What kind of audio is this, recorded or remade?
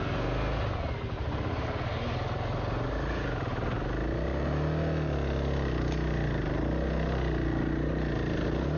recorded